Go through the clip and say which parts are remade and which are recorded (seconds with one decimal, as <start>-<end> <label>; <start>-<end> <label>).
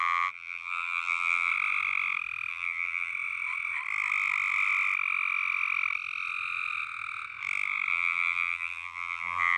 0.0-1.5 remade; 1.5-2.5 recorded; 2.5-3.1 remade; 3.1-7.9 recorded; 7.9-9.6 remade